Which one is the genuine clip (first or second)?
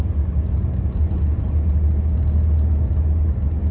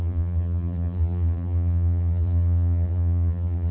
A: first